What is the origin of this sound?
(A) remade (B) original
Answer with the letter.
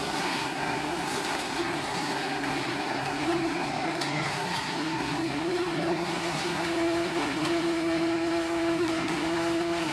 A